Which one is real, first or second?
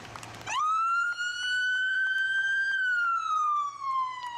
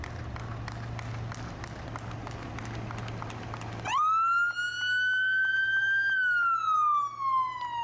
second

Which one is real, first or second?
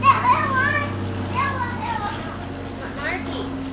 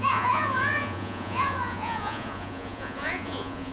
first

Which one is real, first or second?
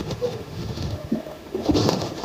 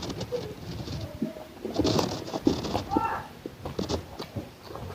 second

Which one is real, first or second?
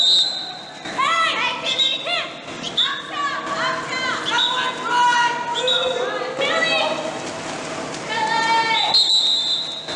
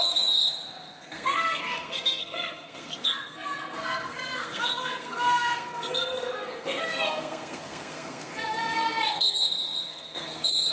first